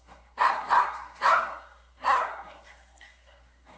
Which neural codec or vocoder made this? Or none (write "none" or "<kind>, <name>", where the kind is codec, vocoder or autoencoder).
codec, SNAC